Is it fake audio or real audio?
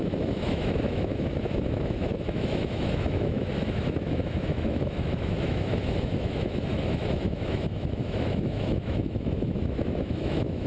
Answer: fake